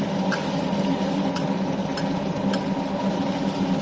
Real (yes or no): yes